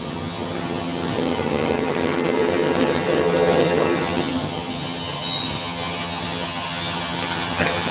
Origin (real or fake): fake